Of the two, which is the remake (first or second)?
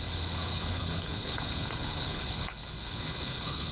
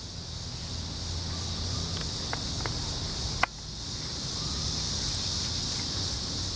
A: first